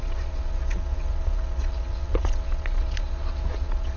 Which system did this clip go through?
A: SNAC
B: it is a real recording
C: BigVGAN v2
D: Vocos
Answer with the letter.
D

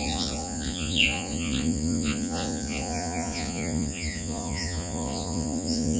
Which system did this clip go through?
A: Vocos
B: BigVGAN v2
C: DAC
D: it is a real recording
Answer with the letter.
A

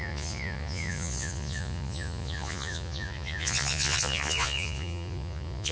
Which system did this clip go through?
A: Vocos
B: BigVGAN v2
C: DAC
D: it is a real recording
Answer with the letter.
A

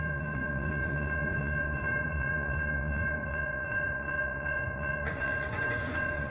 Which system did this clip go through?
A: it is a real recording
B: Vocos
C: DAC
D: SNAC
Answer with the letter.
B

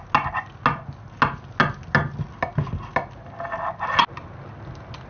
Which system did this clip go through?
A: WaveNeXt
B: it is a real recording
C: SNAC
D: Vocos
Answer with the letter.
B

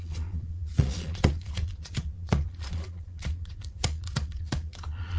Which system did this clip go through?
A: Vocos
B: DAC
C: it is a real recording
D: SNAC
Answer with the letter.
A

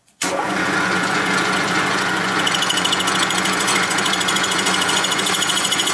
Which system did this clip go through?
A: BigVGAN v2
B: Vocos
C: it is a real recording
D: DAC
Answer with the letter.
B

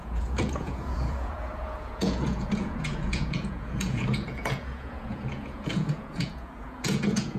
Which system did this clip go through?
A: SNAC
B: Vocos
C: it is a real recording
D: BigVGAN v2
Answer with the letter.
B